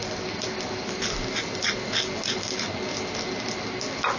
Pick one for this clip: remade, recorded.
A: recorded